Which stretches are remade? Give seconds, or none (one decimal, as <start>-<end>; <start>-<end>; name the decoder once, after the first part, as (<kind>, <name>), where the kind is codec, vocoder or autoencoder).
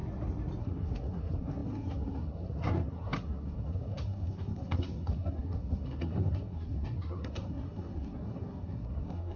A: 0.6-9.4 (codec, SNAC)